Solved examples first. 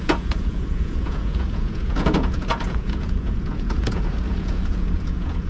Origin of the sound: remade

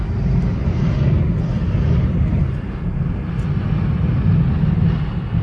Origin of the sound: recorded